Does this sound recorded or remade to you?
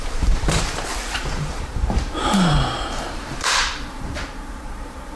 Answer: remade